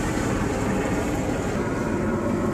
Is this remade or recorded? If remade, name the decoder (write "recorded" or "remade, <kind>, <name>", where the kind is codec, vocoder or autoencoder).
recorded